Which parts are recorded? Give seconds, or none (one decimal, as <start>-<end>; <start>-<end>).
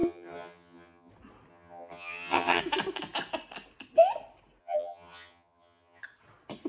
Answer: 1.1-1.5; 2.6-4.6; 6.0-6.7